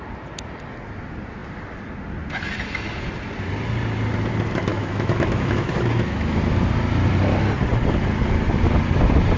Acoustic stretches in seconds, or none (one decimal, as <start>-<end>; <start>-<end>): 0.0-4.7; 6.4-9.4